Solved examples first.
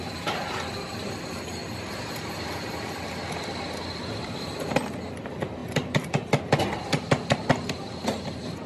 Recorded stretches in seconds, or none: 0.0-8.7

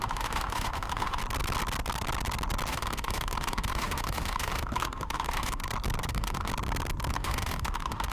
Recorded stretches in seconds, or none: 1.2-2.7; 5.6-6.1; 6.5-7.1

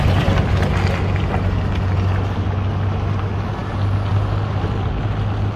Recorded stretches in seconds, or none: 0.0-5.6

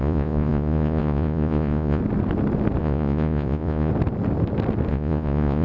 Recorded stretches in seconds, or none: 2.0-2.8; 3.9-4.9

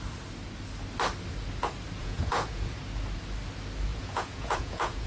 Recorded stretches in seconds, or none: 0.0-2.0; 2.8-3.9

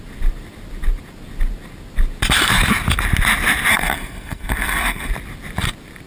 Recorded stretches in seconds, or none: 0.0-3.7; 5.1-6.1

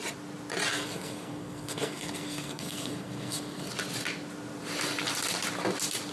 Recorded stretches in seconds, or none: 0.0-0.7; 3.7-6.1